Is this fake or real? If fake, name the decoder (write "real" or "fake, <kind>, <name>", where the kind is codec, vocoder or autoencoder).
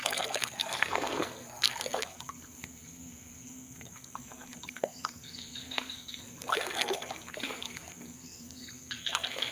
fake, codec, SNAC